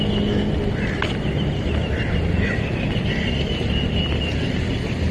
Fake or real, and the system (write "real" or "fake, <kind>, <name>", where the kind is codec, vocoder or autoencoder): real